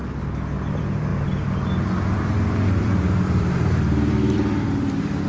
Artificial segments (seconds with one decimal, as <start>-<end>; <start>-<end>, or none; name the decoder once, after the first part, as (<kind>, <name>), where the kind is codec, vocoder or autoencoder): 0.7-1.1 (vocoder, BigVGAN v2); 2.8-5.3

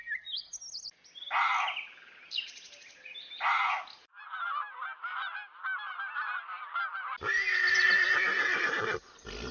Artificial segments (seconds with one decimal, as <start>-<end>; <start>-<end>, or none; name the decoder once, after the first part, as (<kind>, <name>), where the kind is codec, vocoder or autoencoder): 6.8-7.9 (vocoder, BigVGAN v2)

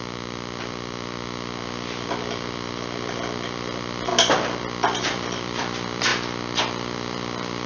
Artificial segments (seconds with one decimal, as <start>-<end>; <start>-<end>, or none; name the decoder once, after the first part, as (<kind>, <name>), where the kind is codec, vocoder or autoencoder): 0.0-4.1 (vocoder, BigVGAN v2); 5.0-6.1; 6.6-7.7

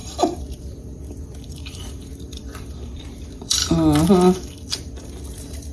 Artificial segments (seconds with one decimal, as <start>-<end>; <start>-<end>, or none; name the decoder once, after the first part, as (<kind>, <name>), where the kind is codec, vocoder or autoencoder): 0.0-3.6 (vocoder, BigVGAN v2); 4.1-5.7

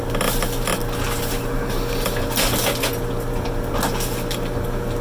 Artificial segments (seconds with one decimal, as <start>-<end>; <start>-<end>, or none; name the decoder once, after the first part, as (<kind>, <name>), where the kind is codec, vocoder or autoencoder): none